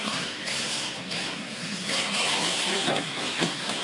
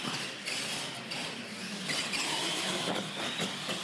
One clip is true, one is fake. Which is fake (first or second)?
first